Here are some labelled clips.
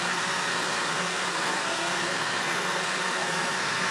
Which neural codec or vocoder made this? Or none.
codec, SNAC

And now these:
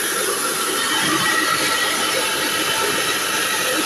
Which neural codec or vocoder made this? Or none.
none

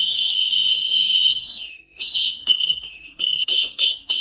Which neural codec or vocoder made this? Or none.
codec, SNAC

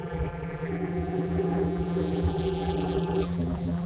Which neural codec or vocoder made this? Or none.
vocoder, BigVGAN v2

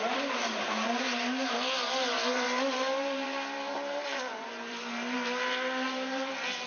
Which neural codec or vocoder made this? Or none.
vocoder, BigVGAN v2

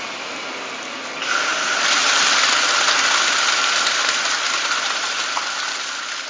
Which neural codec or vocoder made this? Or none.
none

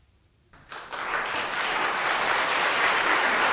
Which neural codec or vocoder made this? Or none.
none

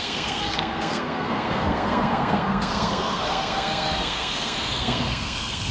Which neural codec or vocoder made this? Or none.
codec, SNAC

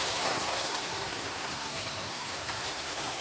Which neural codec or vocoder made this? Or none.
codec, SNAC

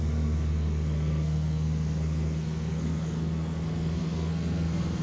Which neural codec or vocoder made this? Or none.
codec, SNAC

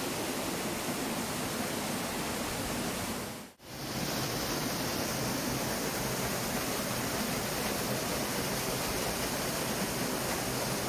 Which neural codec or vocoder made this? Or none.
none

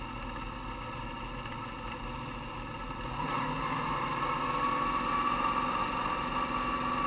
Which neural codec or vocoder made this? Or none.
none